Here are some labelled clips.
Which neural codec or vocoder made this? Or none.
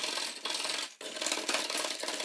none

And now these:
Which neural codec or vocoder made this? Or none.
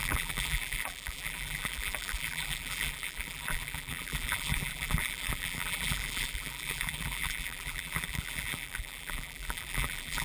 vocoder, BigVGAN v2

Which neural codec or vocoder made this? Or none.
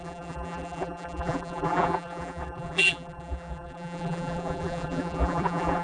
vocoder, BigVGAN v2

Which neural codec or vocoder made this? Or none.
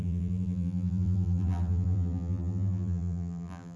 vocoder, BigVGAN v2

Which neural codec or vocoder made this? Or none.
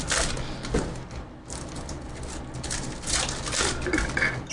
none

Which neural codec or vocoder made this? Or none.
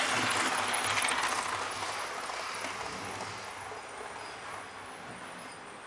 none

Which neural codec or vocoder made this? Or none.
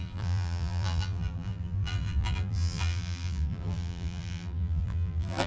vocoder, BigVGAN v2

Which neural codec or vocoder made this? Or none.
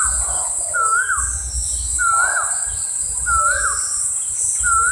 none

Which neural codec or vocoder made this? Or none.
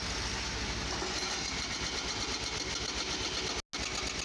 none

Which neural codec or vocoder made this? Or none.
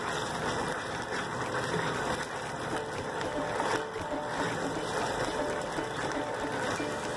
none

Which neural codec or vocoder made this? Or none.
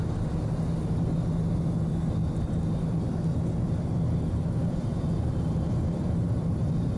none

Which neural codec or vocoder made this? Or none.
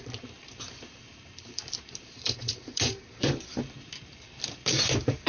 vocoder, BigVGAN v2